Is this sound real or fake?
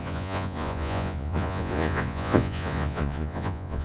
fake